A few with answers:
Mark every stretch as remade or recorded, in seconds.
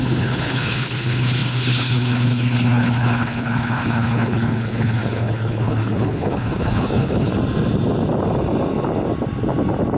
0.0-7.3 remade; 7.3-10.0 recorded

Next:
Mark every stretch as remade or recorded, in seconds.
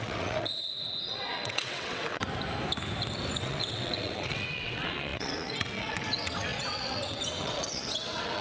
0.0-2.2 remade; 2.2-3.4 recorded; 3.4-8.4 remade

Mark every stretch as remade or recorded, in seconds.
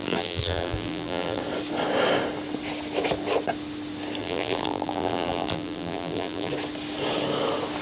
0.0-1.4 remade; 1.4-4.2 recorded; 4.2-6.5 remade; 6.5-7.8 recorded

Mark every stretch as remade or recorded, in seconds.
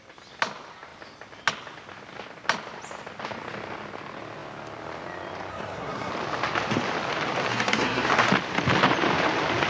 0.0-5.5 recorded; 5.5-6.1 remade; 6.1-7.5 recorded; 7.5-8.1 remade; 8.1-9.7 recorded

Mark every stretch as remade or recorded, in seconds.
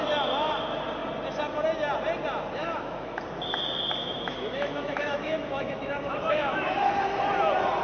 0.0-2.6 recorded; 2.6-3.2 remade; 3.2-4.0 recorded; 4.0-7.0 remade; 7.0-7.8 recorded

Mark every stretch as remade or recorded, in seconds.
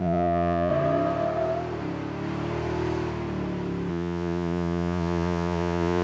0.0-0.7 remade; 0.7-3.9 recorded; 3.9-6.0 remade